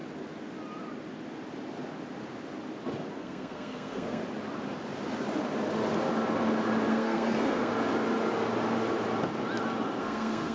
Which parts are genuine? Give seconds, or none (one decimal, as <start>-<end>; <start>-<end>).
0.0-3.2; 4.2-6.9; 7.7-10.0